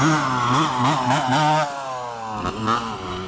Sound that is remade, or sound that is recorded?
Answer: recorded